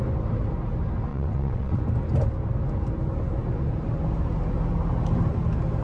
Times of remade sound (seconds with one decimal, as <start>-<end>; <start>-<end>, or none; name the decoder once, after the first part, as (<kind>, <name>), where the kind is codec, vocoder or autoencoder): 1.1-1.8 (vocoder, WaveNeXt)

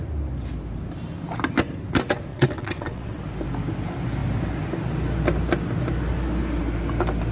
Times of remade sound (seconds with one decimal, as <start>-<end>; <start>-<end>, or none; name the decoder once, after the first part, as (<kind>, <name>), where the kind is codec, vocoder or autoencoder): 2.3-3.2 (vocoder, WaveNeXt)

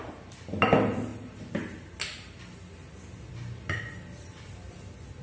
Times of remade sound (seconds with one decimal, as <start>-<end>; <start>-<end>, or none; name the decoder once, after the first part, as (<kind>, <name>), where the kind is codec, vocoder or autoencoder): none

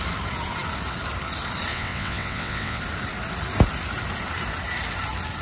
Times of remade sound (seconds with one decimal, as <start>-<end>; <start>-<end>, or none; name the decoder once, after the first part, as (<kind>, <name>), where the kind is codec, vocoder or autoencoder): 1.7-2.8 (vocoder, WaveNeXt)

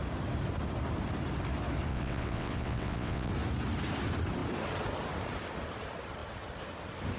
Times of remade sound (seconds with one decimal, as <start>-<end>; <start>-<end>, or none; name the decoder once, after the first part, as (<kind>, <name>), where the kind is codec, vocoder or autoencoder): 1.9-3.3 (vocoder, WaveNeXt)